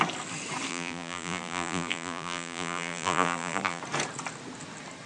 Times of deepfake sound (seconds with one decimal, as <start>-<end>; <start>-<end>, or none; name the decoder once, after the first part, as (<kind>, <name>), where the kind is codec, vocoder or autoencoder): 0.7-3.8 (vocoder, BigVGAN v2)